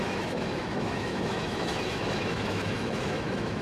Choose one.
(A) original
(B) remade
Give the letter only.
B